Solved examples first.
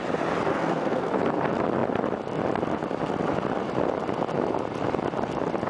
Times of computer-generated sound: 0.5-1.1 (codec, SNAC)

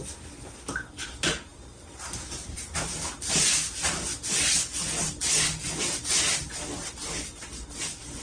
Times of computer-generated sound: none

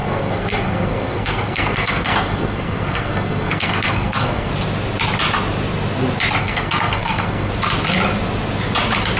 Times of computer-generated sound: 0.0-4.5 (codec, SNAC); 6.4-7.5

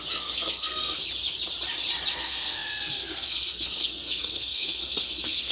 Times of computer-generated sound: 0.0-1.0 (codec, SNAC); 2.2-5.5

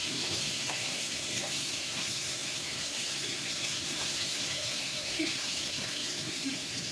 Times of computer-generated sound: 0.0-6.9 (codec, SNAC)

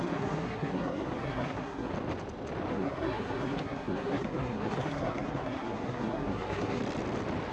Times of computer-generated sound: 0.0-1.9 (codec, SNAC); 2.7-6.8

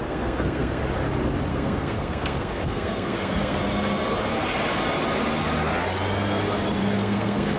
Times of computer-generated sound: 0.0-0.8 (codec, SNAC); 1.5-3.6; 6.8-7.6

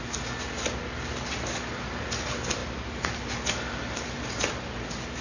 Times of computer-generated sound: none